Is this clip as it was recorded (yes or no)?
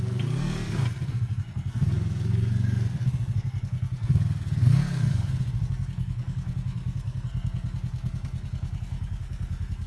no